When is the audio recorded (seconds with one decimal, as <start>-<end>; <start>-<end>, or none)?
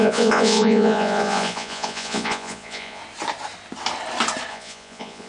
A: 3.0-4.5